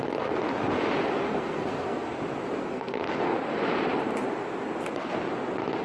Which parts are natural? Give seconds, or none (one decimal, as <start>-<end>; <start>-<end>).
0.0-1.3; 2.1-2.6; 3.2-5.8